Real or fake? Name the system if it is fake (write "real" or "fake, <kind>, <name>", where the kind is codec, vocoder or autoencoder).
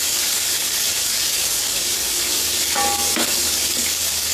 fake, codec, DAC